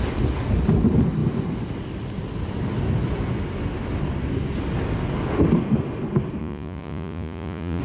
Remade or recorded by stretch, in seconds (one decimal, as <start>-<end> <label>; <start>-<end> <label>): 0.0-6.4 recorded; 6.4-7.8 remade